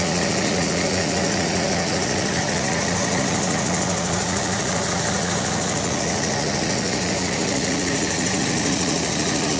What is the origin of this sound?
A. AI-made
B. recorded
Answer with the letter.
A